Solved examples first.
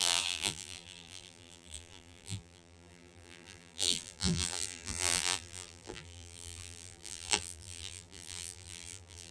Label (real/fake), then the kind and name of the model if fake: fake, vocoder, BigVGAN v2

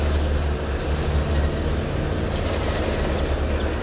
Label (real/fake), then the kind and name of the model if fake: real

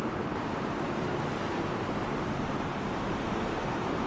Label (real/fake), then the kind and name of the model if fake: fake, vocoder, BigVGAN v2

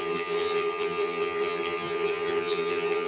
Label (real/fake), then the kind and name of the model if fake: fake, vocoder, HiFi-GAN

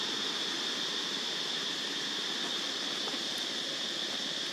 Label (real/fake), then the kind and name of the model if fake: real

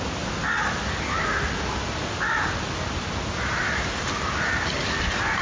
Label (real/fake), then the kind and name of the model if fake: real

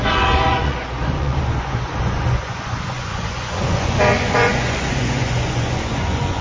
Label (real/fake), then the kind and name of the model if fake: fake, vocoder, Vocos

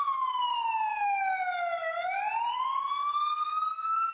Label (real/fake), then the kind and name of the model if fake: real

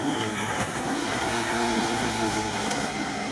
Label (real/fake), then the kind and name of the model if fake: fake, codec, SNAC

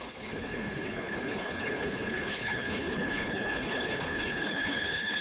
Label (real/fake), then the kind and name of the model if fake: fake, codec, HILCodec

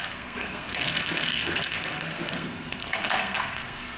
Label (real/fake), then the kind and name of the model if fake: fake, codec, SNAC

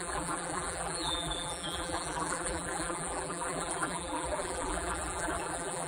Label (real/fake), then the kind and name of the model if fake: fake, vocoder, BigVGAN v2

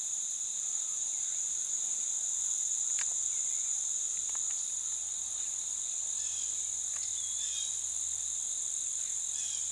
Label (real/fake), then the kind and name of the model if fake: real